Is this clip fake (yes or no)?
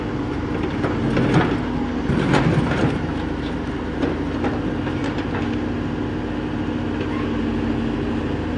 no